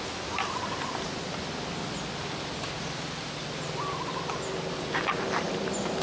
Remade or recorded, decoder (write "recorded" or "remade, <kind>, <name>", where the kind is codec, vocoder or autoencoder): recorded